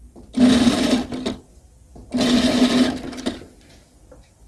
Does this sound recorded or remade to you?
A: recorded